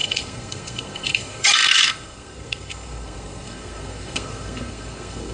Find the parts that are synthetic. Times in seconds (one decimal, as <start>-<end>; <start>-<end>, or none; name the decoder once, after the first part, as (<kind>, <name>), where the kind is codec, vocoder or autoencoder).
0.0-5.3 (codec, SNAC)